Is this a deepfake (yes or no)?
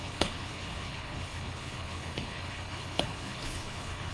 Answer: yes